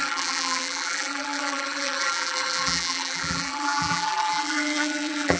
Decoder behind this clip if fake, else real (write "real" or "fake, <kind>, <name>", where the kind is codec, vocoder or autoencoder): fake, vocoder, BigVGAN v2